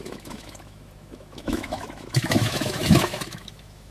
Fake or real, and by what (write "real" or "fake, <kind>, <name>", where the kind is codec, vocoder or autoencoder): fake, autoencoder, DAC-VAE